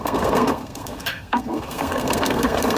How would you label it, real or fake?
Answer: fake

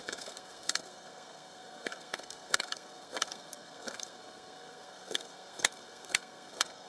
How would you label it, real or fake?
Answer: fake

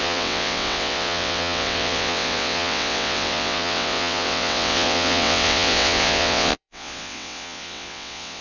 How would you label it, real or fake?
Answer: fake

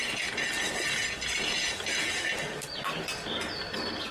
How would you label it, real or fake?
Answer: real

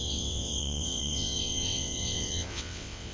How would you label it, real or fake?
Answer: fake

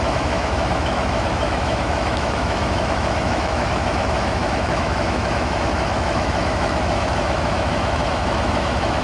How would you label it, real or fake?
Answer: fake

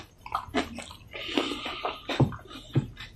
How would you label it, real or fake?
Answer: real